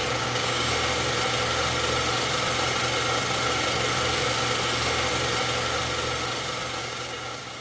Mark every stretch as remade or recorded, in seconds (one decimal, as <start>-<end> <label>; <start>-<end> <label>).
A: 0.0-0.7 remade; 0.7-6.8 recorded; 6.8-7.6 remade